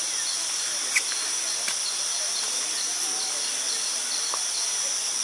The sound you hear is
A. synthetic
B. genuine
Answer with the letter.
B